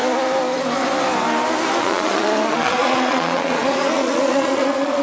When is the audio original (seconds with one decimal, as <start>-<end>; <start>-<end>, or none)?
0.0-1.8